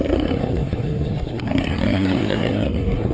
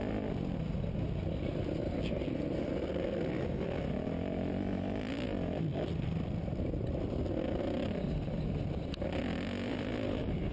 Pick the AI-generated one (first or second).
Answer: first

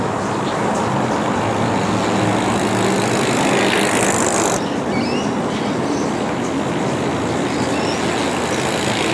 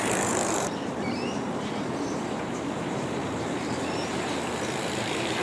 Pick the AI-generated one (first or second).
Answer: second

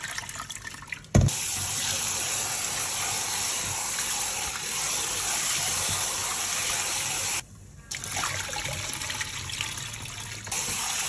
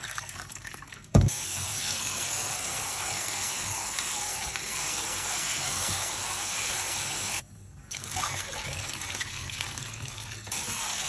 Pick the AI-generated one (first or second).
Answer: second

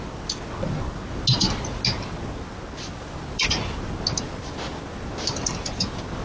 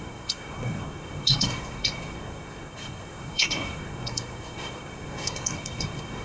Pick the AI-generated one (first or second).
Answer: second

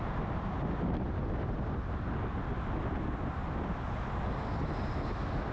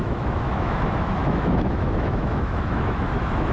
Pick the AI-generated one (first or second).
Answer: second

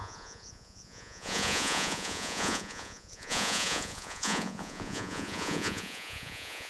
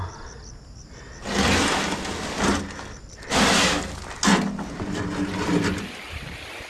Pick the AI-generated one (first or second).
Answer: first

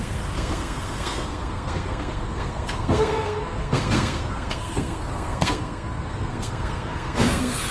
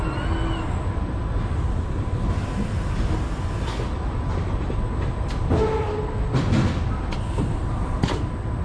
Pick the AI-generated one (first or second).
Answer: first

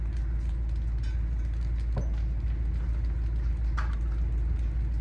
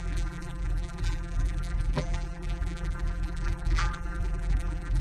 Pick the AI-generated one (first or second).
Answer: second